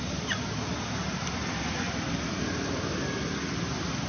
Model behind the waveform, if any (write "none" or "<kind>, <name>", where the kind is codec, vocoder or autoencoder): none